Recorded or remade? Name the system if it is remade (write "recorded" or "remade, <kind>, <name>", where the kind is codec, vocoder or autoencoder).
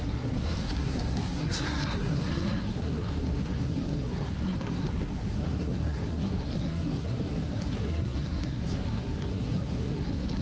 remade, codec, SNAC